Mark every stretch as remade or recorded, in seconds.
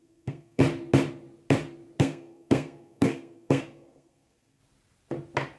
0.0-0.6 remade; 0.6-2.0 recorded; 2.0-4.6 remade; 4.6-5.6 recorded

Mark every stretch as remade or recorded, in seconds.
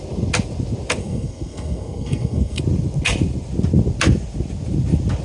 0.0-1.0 recorded; 1.0-2.6 remade; 2.6-5.2 recorded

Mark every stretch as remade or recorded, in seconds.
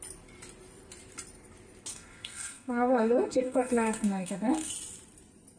0.0-1.9 recorded; 1.9-4.7 remade; 4.7-5.6 recorded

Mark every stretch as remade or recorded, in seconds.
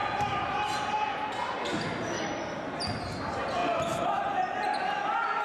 0.0-3.6 recorded; 3.6-4.6 remade; 4.6-5.4 recorded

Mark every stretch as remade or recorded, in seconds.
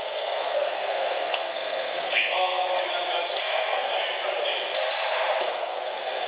0.0-2.6 remade; 2.6-3.4 recorded; 3.4-3.9 remade; 3.9-5.5 recorded; 5.5-6.3 remade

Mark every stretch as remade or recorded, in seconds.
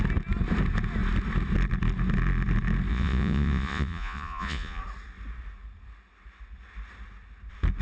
0.0-2.9 recorded; 2.9-4.8 remade; 4.8-7.8 recorded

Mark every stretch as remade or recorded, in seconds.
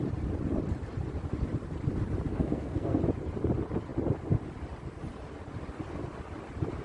0.0-2.3 recorded; 2.3-3.0 remade; 3.0-6.8 recorded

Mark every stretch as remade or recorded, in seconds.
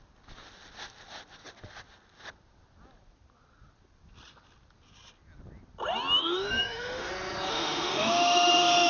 0.0-6.2 recorded; 6.2-7.1 remade; 7.1-7.5 recorded; 7.5-8.9 remade